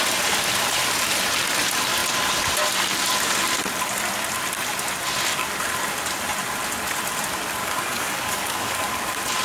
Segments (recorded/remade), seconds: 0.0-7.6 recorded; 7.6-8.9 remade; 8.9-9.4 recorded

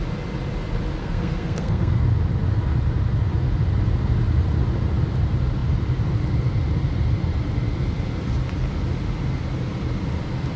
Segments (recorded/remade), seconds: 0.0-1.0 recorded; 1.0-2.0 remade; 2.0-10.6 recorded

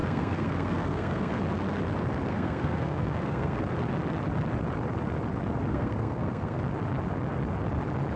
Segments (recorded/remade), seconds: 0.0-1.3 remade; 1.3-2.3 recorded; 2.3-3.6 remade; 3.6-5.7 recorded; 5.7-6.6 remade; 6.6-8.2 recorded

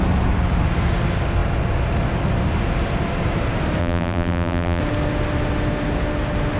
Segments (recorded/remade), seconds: 0.0-3.8 recorded; 3.8-4.8 remade; 4.8-6.6 recorded